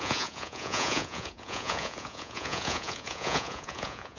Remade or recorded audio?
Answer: remade